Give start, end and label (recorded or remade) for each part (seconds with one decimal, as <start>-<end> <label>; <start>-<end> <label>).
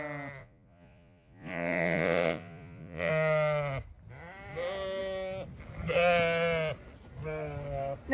0.0-0.4 recorded; 0.4-3.1 remade; 3.1-8.1 recorded